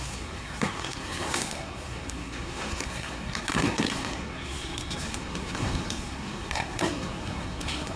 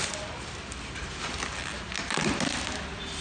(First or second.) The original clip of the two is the second